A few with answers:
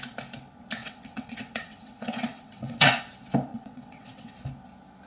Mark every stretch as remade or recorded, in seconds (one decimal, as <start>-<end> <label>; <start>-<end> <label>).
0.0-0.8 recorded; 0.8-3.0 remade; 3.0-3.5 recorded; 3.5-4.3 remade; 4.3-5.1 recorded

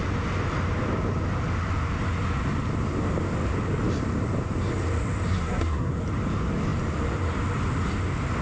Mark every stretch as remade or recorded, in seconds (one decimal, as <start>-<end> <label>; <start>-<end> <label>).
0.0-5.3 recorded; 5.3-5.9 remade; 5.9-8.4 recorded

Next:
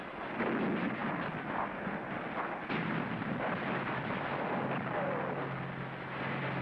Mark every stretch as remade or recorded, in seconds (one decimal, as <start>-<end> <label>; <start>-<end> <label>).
0.0-6.6 recorded

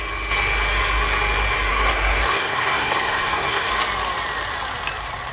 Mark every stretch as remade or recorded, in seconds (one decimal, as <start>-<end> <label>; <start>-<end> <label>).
0.0-1.7 recorded; 1.7-3.7 remade; 3.7-5.3 recorded

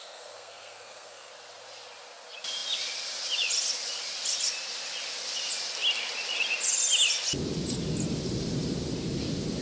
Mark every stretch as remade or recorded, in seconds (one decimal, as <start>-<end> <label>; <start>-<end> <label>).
0.0-1.3 remade; 1.3-9.6 recorded

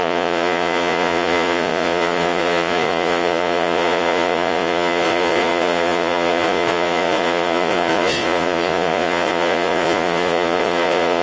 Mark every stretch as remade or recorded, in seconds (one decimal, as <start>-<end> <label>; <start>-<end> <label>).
0.0-11.2 remade

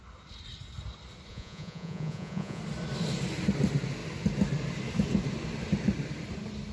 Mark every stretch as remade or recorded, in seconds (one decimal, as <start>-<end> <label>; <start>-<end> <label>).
0.0-1.3 recorded; 1.3-2.6 remade; 2.6-6.7 recorded

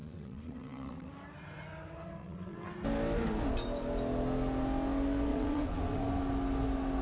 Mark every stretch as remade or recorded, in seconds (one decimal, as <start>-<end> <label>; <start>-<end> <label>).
0.0-1.1 remade; 1.1-2.2 recorded; 2.2-2.7 remade; 2.7-5.3 recorded; 5.3-6.0 remade; 6.0-7.0 recorded